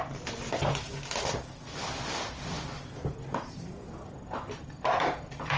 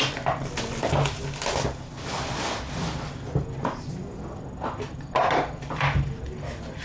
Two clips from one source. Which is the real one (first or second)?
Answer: second